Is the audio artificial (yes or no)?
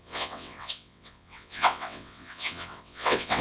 yes